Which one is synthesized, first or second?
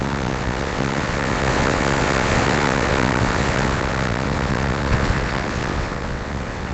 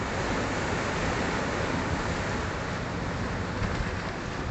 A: first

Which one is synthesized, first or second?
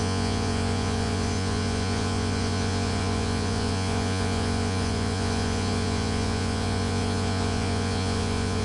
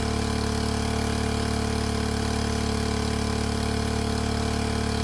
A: first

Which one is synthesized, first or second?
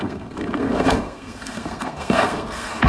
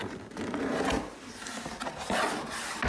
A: first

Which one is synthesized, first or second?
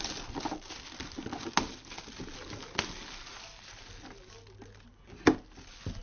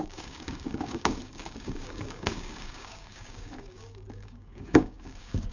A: second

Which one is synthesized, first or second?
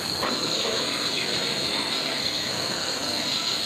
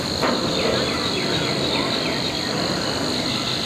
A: first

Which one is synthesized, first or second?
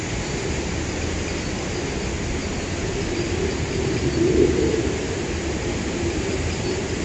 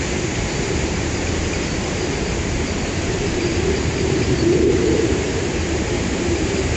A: second